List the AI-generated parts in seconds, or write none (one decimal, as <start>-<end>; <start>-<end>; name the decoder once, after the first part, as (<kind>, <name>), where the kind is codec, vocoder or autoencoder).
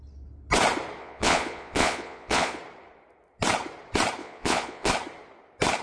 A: 1.0-2.6 (vocoder, Vocos); 4.2-4.9